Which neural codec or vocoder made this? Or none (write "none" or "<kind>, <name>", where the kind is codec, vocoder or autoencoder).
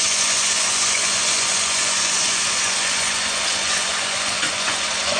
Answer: vocoder, Vocos